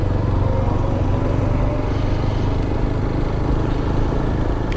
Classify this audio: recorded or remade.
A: recorded